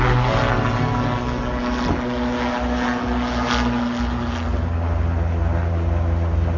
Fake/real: real